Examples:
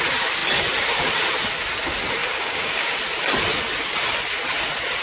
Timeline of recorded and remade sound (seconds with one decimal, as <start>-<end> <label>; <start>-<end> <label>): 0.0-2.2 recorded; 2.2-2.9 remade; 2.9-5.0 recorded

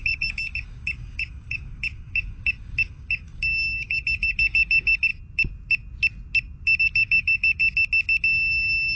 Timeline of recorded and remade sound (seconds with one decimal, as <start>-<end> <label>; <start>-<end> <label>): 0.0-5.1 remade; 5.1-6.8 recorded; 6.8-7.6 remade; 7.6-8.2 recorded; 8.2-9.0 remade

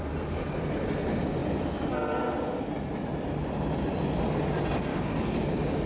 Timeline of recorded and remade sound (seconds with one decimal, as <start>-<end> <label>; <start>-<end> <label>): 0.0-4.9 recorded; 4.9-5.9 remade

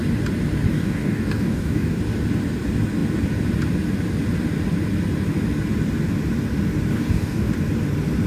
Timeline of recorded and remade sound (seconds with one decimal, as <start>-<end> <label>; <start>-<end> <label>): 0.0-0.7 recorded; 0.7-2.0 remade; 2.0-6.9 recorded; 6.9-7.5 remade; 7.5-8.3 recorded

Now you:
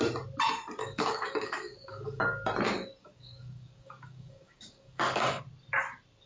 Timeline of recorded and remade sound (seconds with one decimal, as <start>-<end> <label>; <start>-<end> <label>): 0.0-0.8 recorded; 0.8-2.2 remade; 2.2-3.0 recorded; 3.0-5.4 remade; 5.4-6.3 recorded

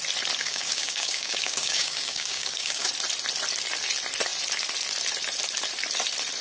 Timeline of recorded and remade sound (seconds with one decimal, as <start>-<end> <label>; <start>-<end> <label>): 0.0-0.4 recorded; 0.4-2.9 remade; 2.9-6.4 recorded

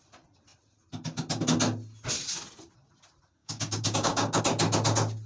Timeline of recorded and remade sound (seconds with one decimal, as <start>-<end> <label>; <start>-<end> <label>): 0.0-3.4 recorded; 3.4-4.4 remade; 4.4-5.3 recorded